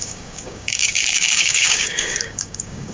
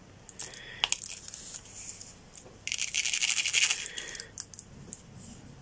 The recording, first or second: second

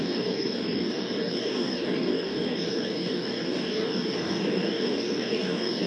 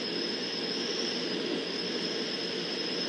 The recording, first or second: second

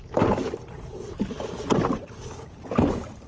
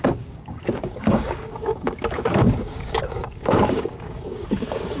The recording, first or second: first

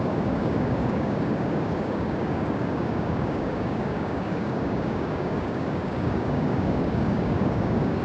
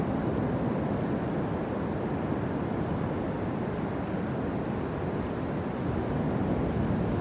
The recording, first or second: second